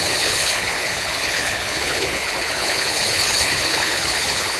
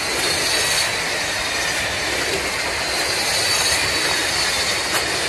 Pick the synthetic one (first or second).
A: first